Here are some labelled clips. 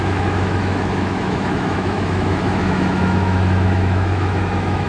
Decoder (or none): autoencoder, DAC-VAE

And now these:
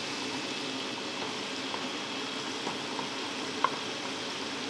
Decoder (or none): none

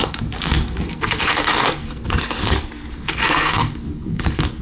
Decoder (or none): codec, SNAC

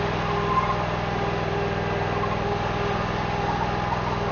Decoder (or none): none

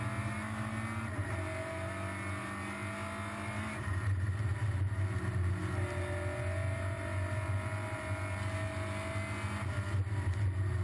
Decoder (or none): none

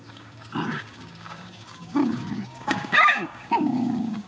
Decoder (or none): codec, DAC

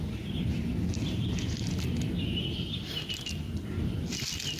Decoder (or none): none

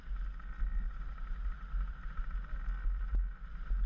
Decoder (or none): none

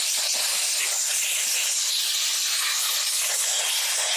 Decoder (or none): none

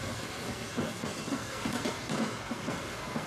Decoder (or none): codec, SNAC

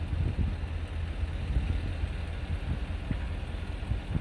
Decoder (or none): none